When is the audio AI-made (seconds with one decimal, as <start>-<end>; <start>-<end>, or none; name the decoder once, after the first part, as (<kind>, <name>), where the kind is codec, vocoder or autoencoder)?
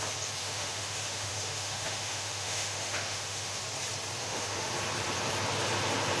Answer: 0.4-3.6 (autoencoder, DAC-VAE); 4.2-4.7